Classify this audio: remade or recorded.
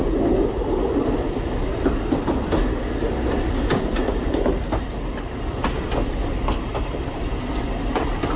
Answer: recorded